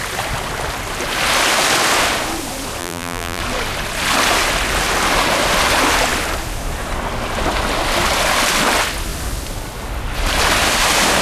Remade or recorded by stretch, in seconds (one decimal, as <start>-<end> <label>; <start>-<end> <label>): 0.0-2.8 recorded; 2.8-3.4 remade; 3.4-11.2 recorded